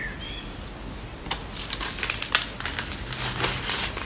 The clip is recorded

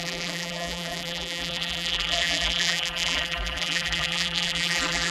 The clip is remade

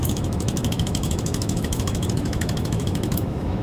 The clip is remade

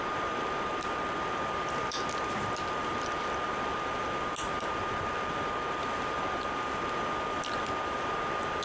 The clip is recorded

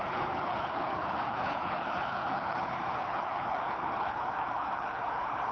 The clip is remade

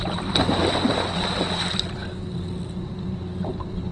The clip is remade